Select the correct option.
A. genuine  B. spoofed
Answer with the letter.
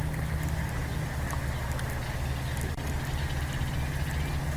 A